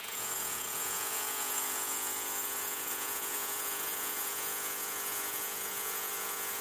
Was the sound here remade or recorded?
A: remade